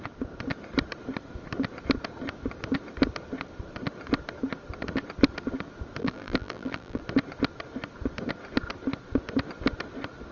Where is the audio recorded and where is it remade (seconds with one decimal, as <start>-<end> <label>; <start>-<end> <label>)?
0.0-6.0 recorded; 6.0-7.0 remade; 7.0-10.3 recorded